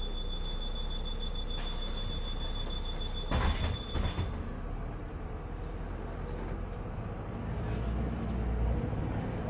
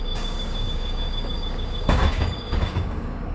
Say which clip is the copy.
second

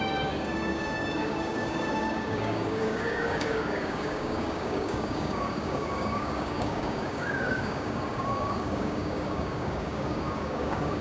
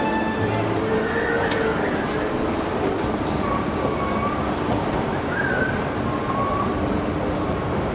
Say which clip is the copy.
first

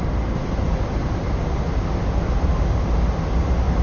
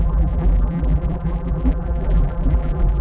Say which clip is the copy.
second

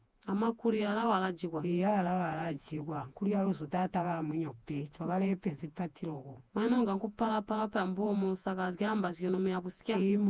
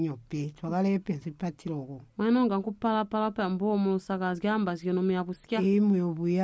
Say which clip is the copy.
first